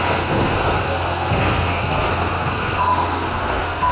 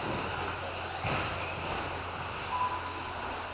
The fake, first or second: first